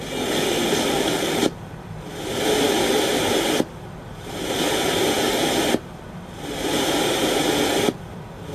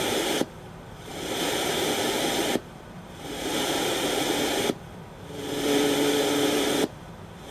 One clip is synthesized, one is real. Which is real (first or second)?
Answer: first